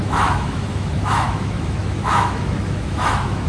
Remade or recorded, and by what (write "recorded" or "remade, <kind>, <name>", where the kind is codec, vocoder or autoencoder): remade, autoencoder, DAC-VAE